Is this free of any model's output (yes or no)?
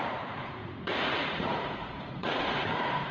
no